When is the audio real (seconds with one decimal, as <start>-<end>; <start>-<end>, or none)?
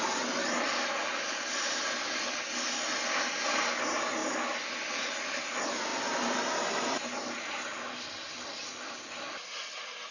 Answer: 0.0-5.9; 7.4-10.1